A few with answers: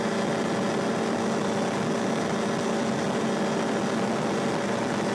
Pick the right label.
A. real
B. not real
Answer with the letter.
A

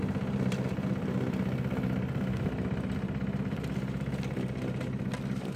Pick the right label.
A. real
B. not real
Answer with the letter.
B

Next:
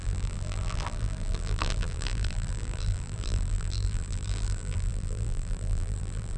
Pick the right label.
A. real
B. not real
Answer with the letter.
B